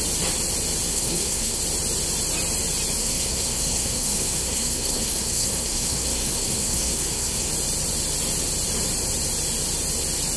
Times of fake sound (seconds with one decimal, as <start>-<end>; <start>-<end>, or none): 0.9-1.6; 3.0-7.5